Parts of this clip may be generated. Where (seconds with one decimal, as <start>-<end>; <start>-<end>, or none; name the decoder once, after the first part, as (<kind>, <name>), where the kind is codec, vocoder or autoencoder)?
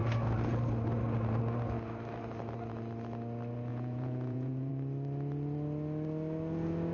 3.7-4.7 (vocoder, Vocos)